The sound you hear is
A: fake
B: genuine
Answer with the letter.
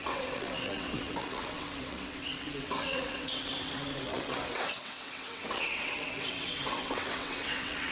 A